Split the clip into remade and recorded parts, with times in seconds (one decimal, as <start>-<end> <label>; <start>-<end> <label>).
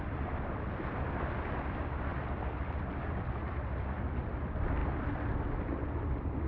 0.0-6.5 recorded